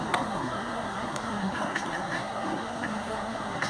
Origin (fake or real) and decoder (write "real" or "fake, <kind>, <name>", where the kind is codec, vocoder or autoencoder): fake, codec, SNAC